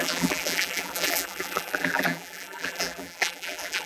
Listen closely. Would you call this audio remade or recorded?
remade